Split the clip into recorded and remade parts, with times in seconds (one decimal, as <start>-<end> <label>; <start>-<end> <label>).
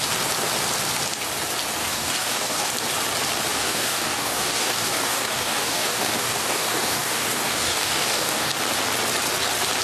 0.0-1.8 recorded; 1.8-2.7 remade; 2.7-3.5 recorded; 3.5-8.5 remade; 8.5-9.8 recorded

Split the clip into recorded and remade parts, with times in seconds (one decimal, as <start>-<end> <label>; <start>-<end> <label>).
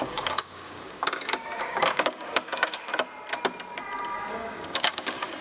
0.0-2.9 remade; 2.9-4.3 recorded; 4.3-5.4 remade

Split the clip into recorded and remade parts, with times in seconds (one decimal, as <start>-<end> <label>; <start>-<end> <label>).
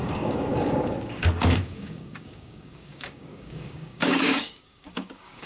0.0-5.5 remade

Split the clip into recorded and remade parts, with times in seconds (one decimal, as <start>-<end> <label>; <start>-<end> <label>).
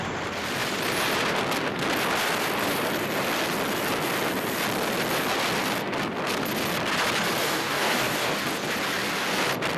0.0-7.4 recorded; 7.4-8.3 remade; 8.3-9.8 recorded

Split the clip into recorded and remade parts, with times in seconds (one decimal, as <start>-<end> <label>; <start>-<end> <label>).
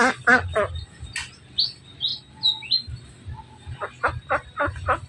0.0-5.1 recorded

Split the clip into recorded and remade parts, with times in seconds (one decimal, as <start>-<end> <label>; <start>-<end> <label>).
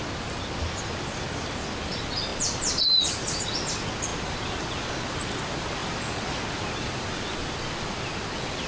0.0-8.7 recorded